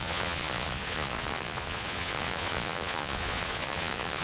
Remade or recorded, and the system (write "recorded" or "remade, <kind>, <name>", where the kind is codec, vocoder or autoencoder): remade, vocoder, Vocos